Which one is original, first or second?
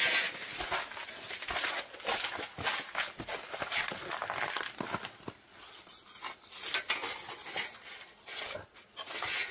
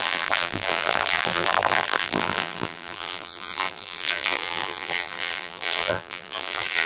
first